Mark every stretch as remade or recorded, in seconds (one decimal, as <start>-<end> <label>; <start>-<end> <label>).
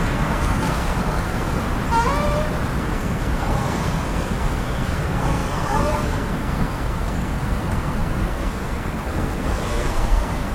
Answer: 0.0-1.6 remade; 1.6-2.8 recorded; 2.8-10.5 remade